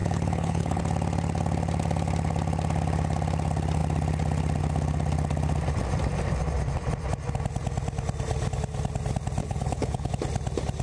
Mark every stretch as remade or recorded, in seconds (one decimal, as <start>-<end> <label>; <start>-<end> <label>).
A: 0.0-0.8 remade; 0.8-9.4 recorded; 9.4-10.1 remade; 10.1-10.8 recorded